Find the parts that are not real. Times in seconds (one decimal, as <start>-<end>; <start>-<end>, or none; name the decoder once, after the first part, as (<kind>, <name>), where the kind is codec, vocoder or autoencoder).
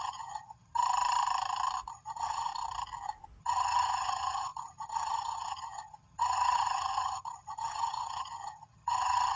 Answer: 0.0-0.8 (vocoder, HiFi-GAN); 1.9-2.5; 3.4-9.4